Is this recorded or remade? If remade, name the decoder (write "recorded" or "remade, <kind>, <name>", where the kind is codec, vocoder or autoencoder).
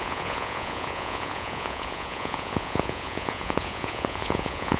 remade, vocoder, Vocos